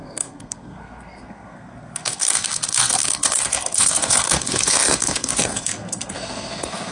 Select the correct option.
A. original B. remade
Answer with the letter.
B